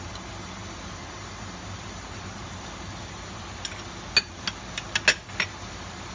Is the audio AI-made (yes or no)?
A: no